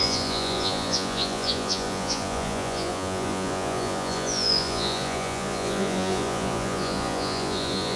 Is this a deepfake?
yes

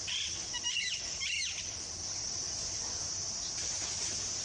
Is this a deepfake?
no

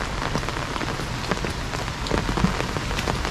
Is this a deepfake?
no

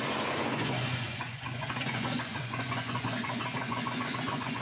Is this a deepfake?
yes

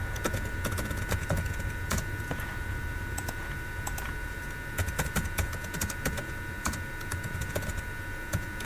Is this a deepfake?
yes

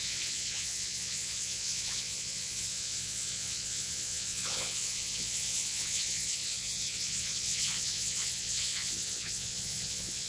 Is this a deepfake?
yes